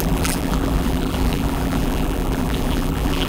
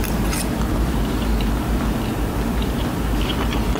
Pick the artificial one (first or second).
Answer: first